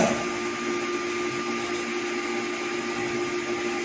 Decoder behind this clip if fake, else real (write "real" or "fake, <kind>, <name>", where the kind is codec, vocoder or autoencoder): real